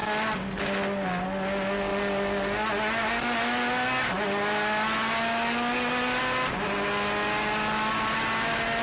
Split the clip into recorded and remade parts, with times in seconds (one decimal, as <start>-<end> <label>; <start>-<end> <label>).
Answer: 0.0-8.8 recorded